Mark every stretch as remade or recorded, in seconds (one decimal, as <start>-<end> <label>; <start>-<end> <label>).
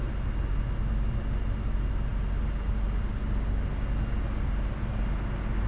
0.0-5.7 recorded